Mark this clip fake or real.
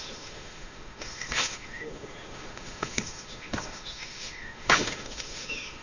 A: fake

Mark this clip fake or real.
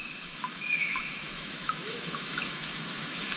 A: fake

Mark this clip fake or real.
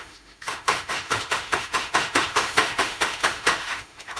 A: fake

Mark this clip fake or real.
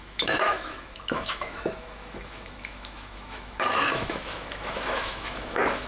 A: fake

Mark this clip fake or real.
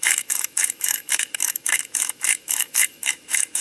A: fake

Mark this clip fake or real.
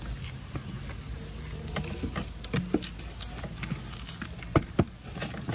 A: real